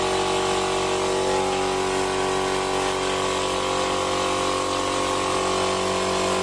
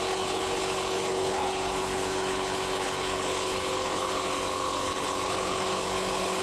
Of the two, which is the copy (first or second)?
second